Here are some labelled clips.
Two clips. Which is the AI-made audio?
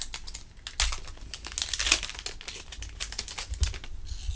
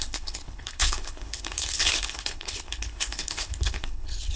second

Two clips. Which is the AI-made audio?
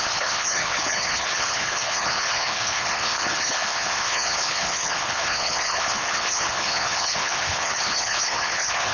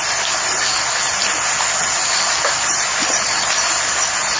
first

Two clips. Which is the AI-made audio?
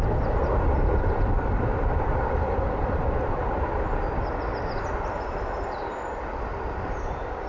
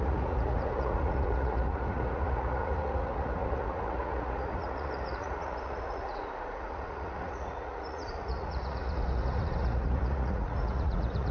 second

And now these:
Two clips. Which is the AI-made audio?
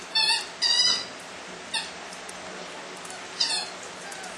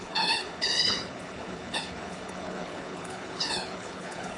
second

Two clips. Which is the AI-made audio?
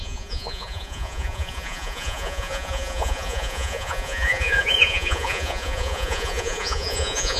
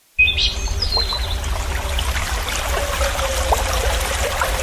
first